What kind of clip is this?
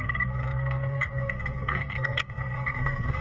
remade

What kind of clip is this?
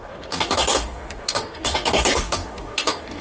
remade